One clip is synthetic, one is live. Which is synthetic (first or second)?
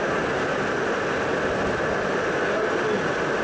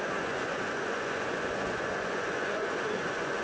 second